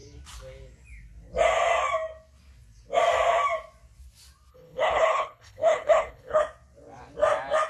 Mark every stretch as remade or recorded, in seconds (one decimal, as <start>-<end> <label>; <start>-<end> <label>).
0.0-4.5 recorded; 4.5-6.4 remade; 6.4-7.7 recorded